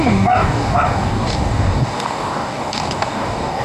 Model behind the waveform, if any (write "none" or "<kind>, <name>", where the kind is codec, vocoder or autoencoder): codec, DAC